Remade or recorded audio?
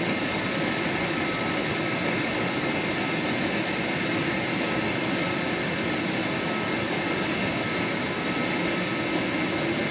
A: recorded